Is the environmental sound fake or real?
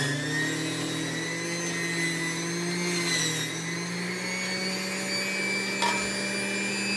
real